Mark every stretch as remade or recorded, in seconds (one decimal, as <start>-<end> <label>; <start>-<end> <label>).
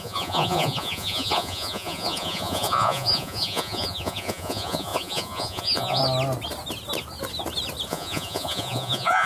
0.0-6.0 remade; 6.0-7.9 recorded; 7.9-9.3 remade